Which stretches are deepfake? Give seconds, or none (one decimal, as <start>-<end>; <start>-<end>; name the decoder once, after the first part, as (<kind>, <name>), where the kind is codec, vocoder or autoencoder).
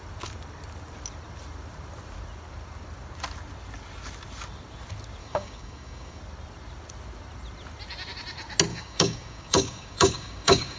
5.2-6.2 (codec, DAC); 8.7-10.8